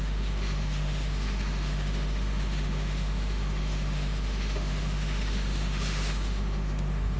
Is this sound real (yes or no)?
no